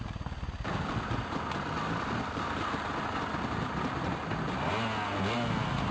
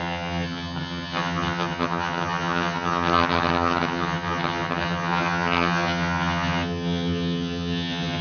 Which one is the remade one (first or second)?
second